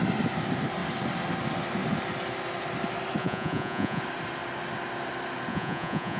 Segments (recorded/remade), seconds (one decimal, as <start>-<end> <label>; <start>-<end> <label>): 0.0-3.2 recorded; 3.2-4.0 remade; 4.0-5.5 recorded; 5.5-6.2 remade